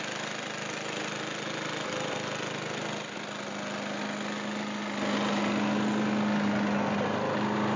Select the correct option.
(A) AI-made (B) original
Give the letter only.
B